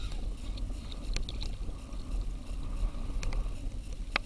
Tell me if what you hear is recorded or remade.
recorded